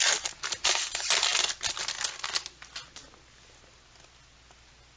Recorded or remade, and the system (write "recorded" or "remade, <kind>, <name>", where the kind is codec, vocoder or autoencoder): recorded